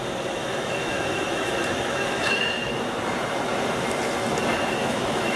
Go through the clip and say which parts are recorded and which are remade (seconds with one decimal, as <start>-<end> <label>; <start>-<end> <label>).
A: 0.0-0.4 recorded; 0.4-2.7 remade; 2.7-4.8 recorded; 4.8-5.4 remade